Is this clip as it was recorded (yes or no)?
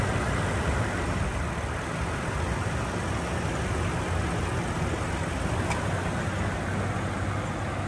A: yes